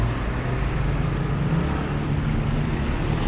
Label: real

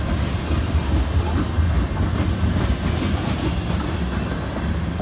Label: real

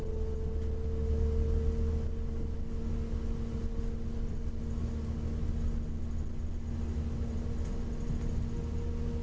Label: real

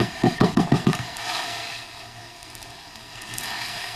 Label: fake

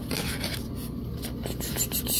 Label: real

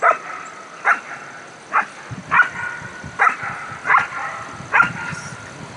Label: real